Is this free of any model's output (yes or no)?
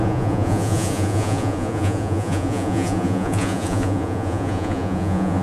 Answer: no